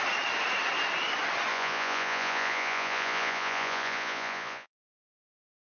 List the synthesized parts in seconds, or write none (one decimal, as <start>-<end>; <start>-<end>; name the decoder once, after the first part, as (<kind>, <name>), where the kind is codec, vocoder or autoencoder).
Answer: 1.5-4.9 (vocoder, Vocos)